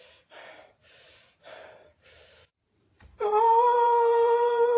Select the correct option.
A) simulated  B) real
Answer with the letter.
A